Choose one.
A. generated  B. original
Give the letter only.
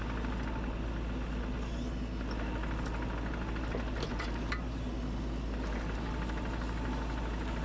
B